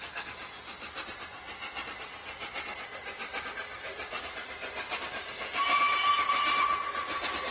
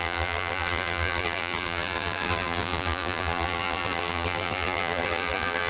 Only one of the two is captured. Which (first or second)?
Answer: first